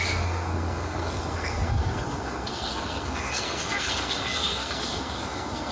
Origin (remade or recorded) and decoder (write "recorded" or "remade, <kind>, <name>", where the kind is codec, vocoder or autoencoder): remade, codec, SNAC